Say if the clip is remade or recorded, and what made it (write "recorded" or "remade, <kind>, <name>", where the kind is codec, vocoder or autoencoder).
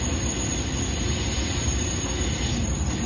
recorded